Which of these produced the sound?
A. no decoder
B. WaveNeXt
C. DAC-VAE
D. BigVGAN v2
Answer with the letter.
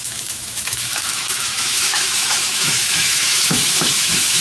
C